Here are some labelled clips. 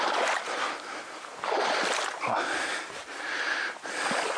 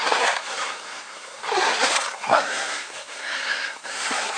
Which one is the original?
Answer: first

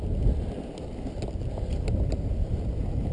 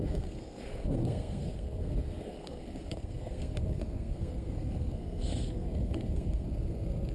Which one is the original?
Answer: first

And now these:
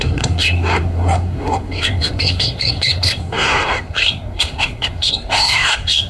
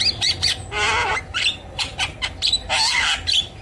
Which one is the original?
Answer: second